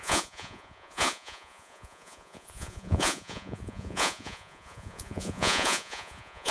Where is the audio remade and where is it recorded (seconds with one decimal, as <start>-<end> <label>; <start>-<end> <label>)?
0.0-6.5 remade